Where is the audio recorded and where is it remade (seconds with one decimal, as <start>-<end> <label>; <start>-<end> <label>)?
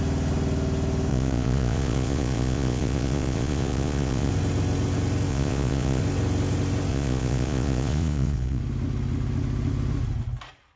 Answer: 0.0-1.1 recorded; 1.1-4.3 remade; 4.3-5.3 recorded; 5.3-6.0 remade; 6.0-6.9 recorded; 6.9-8.6 remade; 8.6-10.8 recorded